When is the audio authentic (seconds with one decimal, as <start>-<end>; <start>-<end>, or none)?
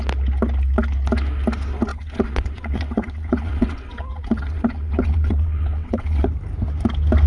0.0-1.9; 6.3-7.3